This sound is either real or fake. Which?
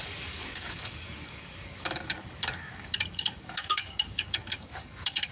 fake